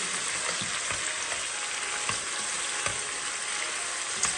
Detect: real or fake real